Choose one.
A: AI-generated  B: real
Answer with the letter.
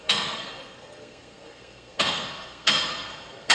A